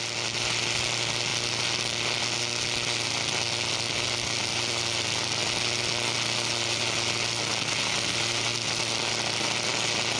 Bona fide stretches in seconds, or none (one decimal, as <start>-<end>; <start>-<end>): 0.0-10.2